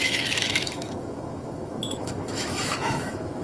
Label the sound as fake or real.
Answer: fake